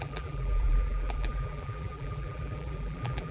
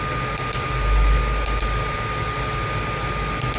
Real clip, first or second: second